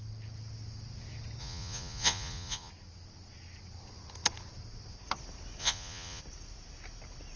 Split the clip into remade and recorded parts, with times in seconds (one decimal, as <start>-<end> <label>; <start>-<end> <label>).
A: 0.0-1.4 recorded; 1.4-2.7 remade; 2.7-5.6 recorded; 5.6-6.2 remade; 6.2-7.4 recorded